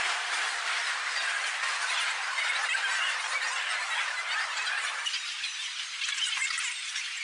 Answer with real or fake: real